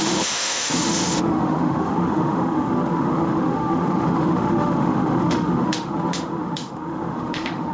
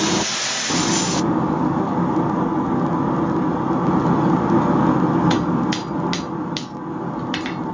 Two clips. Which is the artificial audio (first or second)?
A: first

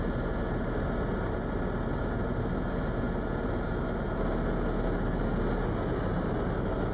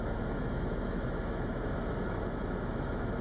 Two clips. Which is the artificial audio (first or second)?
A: second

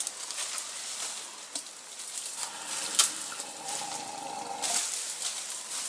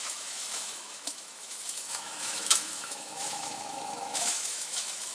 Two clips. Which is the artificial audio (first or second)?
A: second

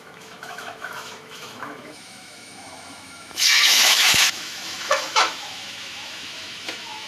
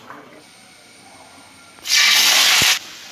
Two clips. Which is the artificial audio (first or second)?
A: first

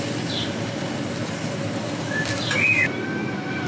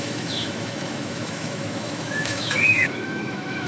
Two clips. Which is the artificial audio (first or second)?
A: second